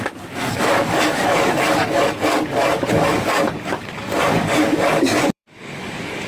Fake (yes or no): yes